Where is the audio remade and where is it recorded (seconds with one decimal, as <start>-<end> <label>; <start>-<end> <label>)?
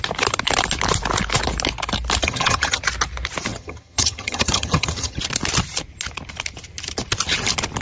0.0-2.2 recorded; 2.2-2.8 remade; 2.8-3.5 recorded; 3.5-5.2 remade; 5.2-7.8 recorded